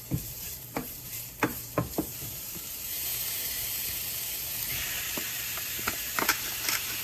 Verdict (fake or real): fake